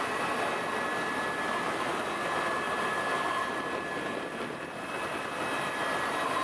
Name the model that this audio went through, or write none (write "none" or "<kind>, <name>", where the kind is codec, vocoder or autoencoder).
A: none